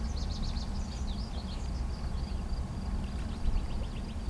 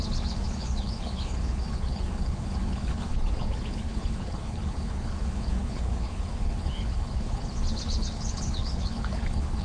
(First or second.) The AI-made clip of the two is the second